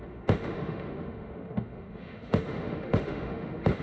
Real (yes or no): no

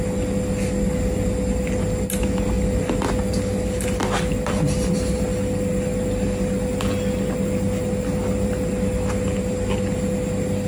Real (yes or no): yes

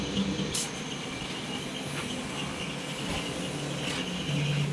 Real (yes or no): yes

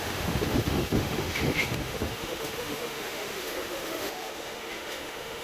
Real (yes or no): no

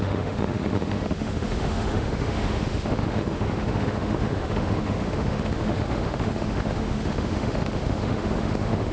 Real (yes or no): no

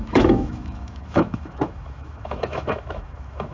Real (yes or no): no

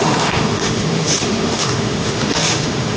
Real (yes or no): no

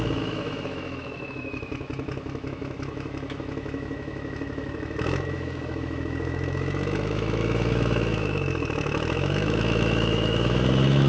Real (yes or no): no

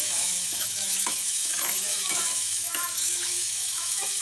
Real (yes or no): no